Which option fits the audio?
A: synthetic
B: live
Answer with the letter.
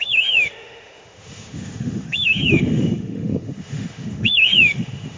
A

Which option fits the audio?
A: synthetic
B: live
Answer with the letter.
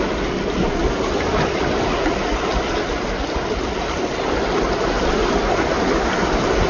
B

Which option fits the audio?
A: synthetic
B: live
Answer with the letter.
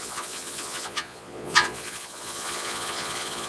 A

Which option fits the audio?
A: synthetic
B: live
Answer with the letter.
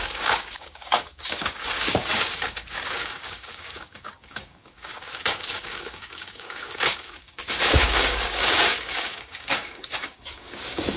A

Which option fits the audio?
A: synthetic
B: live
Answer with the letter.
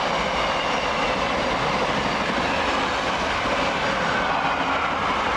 B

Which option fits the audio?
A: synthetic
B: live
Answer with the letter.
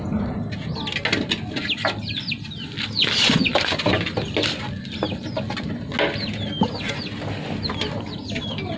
B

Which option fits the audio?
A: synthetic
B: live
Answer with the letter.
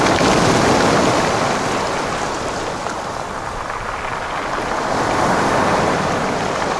B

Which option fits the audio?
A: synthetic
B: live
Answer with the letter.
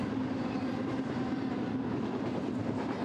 B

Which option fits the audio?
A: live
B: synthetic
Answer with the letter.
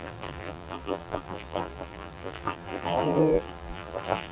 B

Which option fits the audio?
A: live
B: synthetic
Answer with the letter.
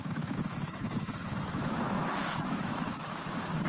B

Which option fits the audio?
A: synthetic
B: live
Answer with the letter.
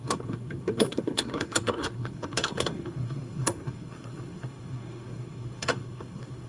A